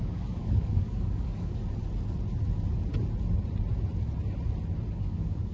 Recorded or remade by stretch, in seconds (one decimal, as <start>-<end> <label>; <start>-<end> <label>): 0.0-1.6 remade; 1.6-4.9 recorded; 4.9-5.5 remade